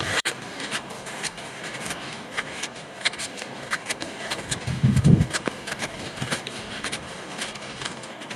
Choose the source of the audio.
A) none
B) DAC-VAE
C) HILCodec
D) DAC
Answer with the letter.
D